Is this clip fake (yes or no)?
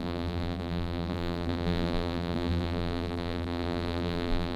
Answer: yes